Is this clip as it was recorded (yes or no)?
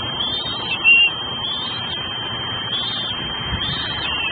yes